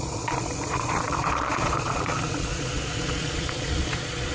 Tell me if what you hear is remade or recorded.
remade